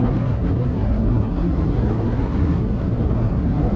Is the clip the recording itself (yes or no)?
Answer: no